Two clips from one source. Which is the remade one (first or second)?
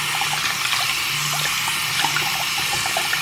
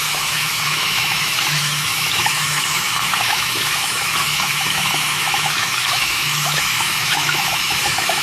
second